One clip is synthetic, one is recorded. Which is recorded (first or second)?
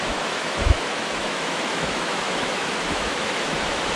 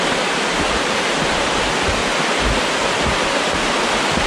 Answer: second